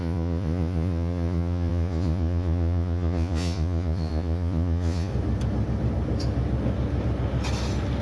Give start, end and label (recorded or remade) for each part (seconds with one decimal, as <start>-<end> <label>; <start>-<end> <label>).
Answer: 0.0-5.1 remade; 5.1-8.0 recorded